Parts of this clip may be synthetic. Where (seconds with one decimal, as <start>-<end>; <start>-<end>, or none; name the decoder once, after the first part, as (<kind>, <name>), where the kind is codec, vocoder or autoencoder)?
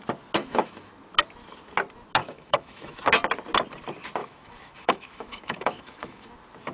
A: 0.4-0.9 (autoencoder, DAC-VAE); 2.2-3.0; 4.2-6.3